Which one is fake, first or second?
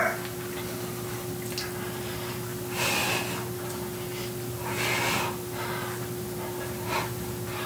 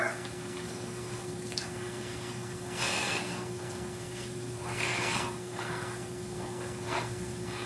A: second